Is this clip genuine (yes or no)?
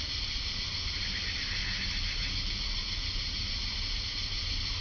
yes